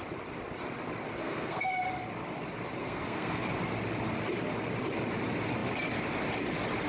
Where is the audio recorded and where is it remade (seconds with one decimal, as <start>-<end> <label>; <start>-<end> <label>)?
0.0-1.2 recorded; 1.2-1.7 remade; 1.7-2.8 recorded; 2.8-3.4 remade; 3.4-6.9 recorded